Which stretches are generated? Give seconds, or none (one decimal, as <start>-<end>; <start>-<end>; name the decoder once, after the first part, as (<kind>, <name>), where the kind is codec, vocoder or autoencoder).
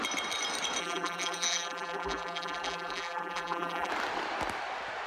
0.8-3.9 (vocoder, BigVGAN v2)